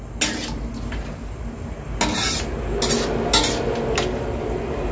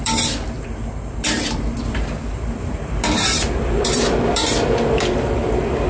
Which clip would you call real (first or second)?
first